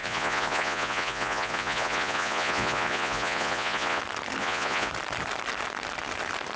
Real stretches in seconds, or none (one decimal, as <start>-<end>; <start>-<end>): 4.0-4.4; 4.9-6.6